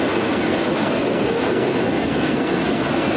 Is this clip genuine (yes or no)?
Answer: no